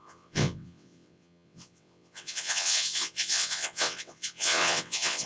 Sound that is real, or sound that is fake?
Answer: fake